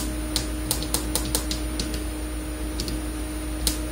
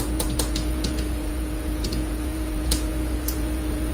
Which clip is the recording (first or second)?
first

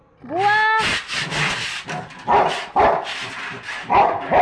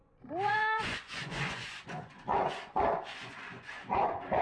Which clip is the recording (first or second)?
first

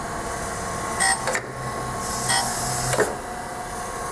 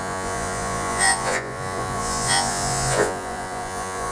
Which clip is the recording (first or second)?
first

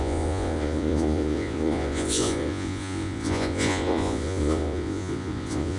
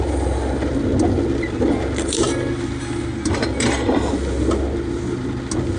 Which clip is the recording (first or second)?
second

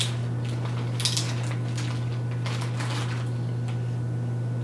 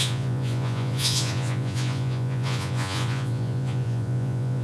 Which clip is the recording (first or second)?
first